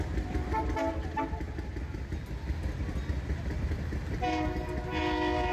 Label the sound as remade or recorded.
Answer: recorded